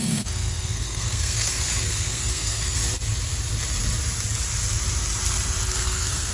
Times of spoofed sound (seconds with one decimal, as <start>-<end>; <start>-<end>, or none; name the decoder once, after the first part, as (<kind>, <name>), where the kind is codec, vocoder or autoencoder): 0.0-2.8 (codec, SNAC); 5.7-6.3